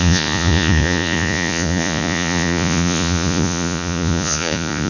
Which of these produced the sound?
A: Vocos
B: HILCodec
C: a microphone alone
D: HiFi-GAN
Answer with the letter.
A